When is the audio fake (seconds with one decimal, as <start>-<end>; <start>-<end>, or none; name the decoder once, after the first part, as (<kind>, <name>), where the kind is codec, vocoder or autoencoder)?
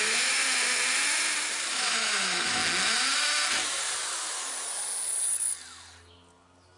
0.0-0.4 (autoencoder, DAC-VAE); 1.7-2.6